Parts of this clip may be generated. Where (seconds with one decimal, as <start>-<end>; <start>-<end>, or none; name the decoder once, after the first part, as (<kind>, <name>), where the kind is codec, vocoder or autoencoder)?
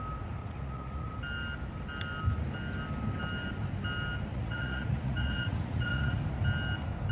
0.4-1.1 (vocoder, Vocos); 4.3-6.2